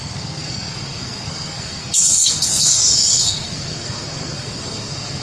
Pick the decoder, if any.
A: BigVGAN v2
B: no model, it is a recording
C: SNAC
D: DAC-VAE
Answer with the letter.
C